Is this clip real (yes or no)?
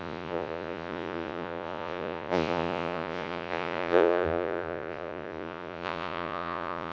no